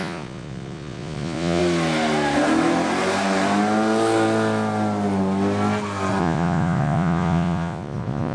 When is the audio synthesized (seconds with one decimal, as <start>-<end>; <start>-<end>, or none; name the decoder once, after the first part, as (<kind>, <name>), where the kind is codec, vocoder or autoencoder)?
0.0-1.6 (vocoder, Vocos); 6.2-8.3